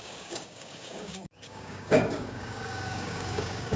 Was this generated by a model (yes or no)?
yes